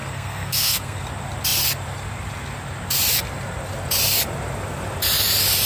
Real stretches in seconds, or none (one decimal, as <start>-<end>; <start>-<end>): 1.0-5.7

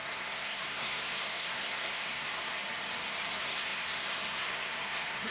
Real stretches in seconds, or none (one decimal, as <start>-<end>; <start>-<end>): 2.6-3.3

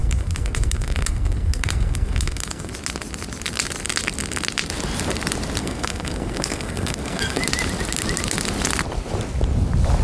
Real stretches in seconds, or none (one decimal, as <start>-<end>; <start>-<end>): 2.7-5.6; 7.4-10.0

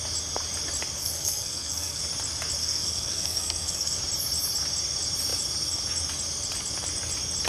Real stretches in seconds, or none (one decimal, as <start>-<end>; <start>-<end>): 0.0-1.0; 2.0-2.6; 4.0-7.5

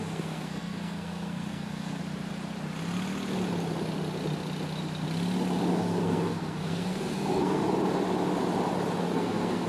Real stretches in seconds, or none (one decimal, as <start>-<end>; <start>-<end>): 2.0-5.7; 7.6-9.0